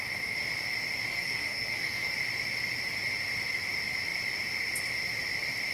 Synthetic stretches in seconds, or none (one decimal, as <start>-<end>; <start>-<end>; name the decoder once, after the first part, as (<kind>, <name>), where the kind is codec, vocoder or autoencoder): 1.1-2.1 (codec, SNAC)

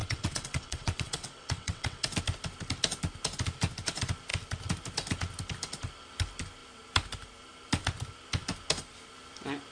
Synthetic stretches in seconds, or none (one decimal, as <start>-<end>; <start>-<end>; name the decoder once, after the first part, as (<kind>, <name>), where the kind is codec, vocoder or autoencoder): 0.0-2.1 (vocoder, WaveNeXt)